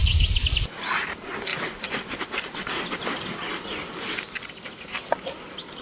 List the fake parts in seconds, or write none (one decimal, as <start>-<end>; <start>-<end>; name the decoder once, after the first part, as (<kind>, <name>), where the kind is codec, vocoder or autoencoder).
none